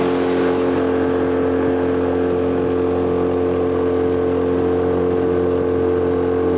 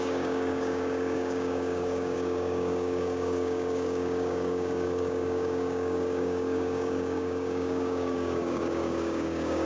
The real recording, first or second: first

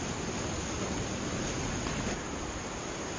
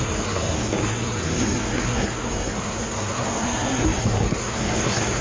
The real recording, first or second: first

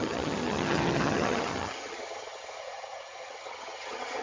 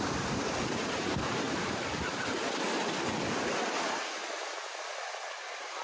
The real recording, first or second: second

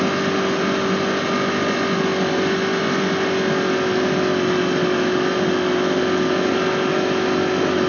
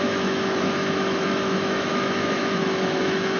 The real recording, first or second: first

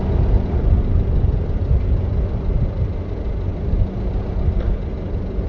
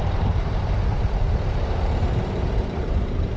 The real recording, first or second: first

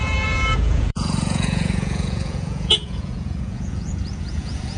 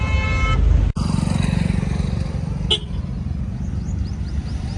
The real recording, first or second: second